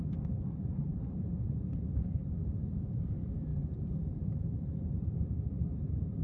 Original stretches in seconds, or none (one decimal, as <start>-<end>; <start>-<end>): 0.0-0.9; 3.1-3.5